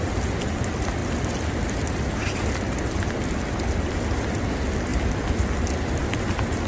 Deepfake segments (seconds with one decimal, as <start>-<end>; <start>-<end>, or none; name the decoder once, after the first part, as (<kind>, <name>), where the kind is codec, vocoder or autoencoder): none